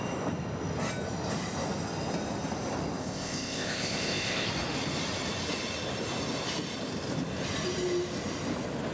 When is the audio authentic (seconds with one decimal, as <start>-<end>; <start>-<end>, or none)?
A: 0.0-3.0; 4.5-8.9